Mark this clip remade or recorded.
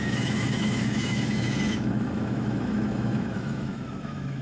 remade